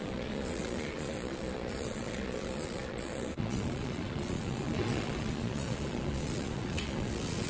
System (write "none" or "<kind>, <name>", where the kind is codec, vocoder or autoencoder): vocoder, Vocos